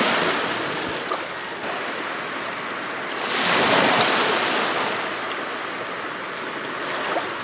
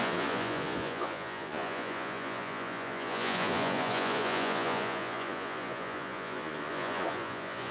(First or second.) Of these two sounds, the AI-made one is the second